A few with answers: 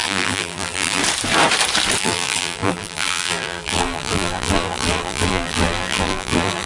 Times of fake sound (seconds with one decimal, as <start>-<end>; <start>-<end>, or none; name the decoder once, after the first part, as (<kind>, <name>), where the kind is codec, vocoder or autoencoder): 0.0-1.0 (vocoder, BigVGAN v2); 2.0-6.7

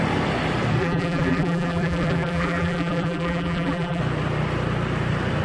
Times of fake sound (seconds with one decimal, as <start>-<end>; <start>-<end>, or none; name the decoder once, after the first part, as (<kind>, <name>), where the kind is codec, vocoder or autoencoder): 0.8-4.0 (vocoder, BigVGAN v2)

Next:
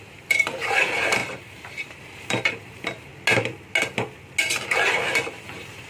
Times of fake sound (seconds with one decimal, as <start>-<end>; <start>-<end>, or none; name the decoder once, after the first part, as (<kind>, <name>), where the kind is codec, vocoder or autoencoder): 0.0-3.1 (vocoder, BigVGAN v2); 5.3-5.9